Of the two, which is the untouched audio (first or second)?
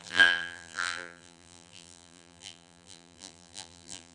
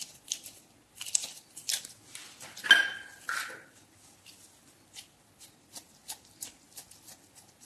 second